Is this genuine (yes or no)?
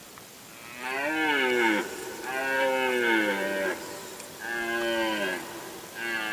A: yes